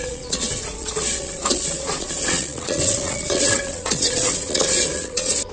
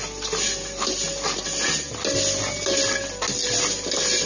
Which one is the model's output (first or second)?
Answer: first